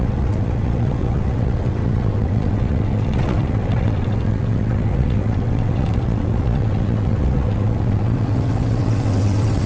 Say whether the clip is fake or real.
fake